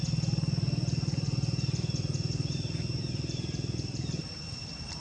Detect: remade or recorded recorded